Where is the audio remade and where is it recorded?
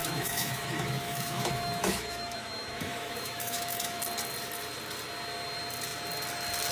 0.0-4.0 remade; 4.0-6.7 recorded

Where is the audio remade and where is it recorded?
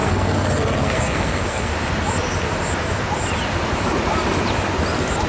0.0-1.7 remade; 1.7-5.3 recorded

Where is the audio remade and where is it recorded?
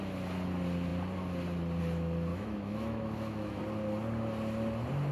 0.0-2.3 recorded; 2.3-3.6 remade; 3.6-5.1 recorded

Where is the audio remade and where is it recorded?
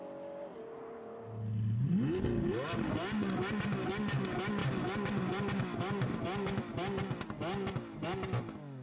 0.0-8.8 recorded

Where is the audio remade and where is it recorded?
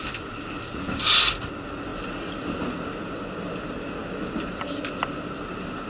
0.0-5.9 recorded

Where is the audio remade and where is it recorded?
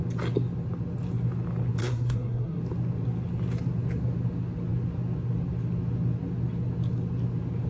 0.0-1.8 recorded; 1.8-2.6 remade; 2.6-7.7 recorded